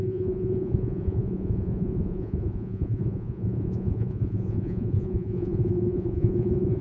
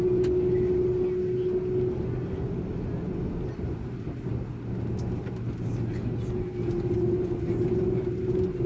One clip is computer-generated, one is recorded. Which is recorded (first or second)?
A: second